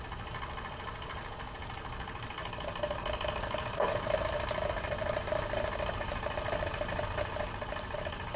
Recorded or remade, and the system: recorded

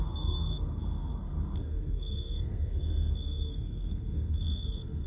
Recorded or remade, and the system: remade, codec, SNAC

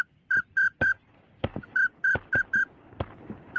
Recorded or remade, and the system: remade, vocoder, BigVGAN v2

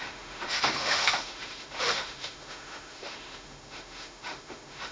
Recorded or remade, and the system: remade, autoencoder, DAC-VAE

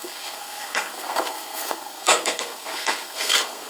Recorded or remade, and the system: remade, codec, SNAC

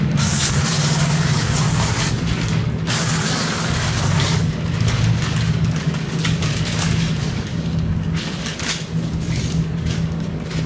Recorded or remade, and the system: remade, codec, DAC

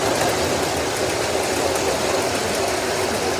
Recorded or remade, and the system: recorded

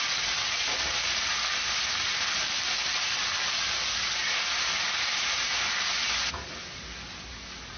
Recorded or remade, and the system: recorded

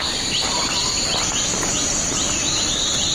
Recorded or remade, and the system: recorded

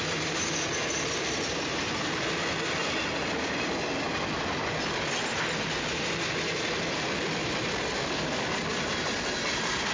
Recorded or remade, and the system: recorded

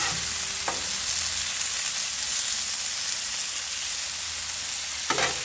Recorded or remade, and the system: recorded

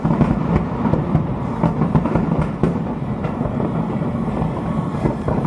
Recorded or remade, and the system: remade, vocoder, BigVGAN v2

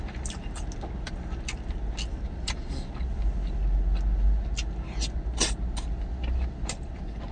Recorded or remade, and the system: recorded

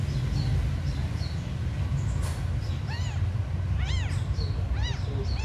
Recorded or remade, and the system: recorded